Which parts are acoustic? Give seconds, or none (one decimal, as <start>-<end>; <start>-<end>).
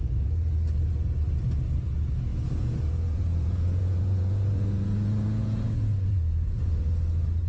0.0-2.3; 6.8-7.5